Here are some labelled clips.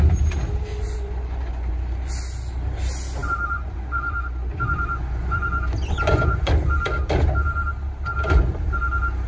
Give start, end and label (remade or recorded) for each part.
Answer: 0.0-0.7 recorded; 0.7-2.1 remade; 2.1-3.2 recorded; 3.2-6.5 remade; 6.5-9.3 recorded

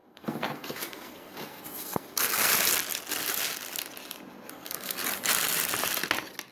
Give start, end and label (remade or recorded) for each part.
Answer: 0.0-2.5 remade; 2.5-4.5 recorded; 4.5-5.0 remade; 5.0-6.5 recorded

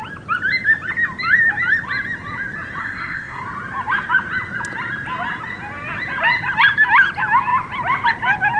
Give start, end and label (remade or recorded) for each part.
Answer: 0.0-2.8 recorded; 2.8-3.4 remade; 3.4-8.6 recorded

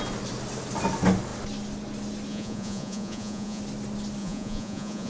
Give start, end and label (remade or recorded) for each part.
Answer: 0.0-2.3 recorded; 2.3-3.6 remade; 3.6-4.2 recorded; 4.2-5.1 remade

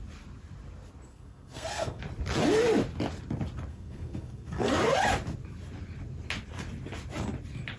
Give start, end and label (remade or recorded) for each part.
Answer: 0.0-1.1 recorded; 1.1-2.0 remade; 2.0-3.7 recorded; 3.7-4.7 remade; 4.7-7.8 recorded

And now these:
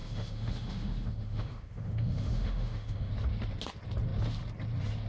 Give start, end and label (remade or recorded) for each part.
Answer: 0.0-3.1 remade; 3.1-5.1 recorded